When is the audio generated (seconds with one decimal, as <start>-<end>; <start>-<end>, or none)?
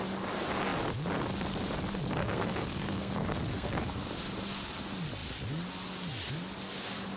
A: 2.2-3.8